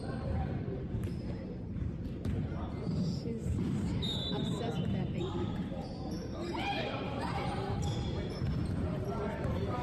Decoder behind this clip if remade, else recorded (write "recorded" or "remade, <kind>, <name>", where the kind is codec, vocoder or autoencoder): remade, vocoder, BigVGAN v2